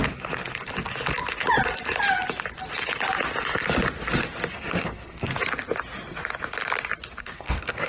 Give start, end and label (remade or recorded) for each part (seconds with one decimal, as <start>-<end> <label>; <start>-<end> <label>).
0.0-4.5 recorded; 4.5-5.3 remade; 5.3-7.2 recorded; 7.2-7.9 remade